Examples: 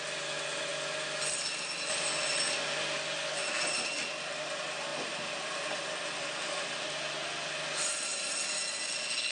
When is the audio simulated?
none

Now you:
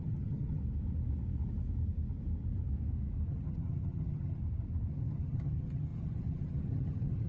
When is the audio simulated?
0.0-0.6 (vocoder, HiFi-GAN); 3.3-4.4; 4.9-7.3